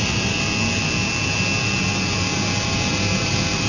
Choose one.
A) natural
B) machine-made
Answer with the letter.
A